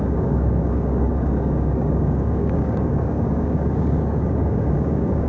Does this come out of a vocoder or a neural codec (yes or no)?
yes